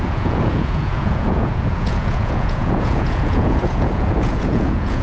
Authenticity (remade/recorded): remade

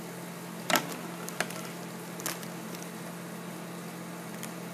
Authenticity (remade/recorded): recorded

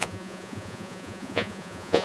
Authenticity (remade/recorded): remade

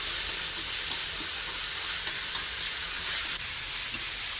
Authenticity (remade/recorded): recorded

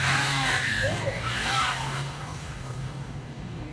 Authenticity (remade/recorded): remade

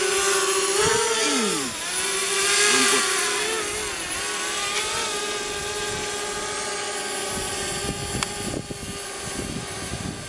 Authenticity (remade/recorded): recorded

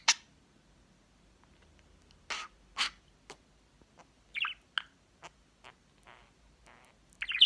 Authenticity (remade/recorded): recorded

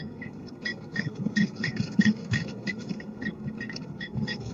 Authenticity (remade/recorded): remade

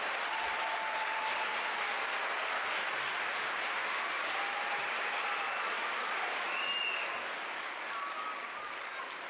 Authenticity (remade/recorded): recorded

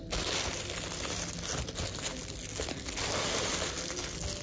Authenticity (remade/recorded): recorded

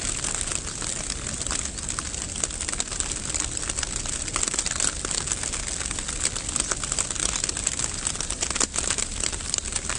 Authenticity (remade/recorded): recorded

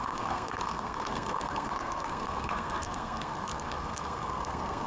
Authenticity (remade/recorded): remade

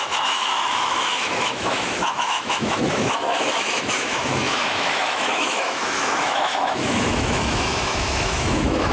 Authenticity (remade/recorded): remade